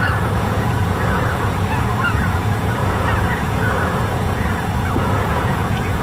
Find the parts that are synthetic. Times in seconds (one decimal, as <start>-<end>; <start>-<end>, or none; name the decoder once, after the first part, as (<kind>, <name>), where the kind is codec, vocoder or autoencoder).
0.0-6.0 (vocoder, Vocos)